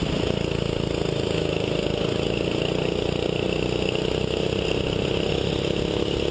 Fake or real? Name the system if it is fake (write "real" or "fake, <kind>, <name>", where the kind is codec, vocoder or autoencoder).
real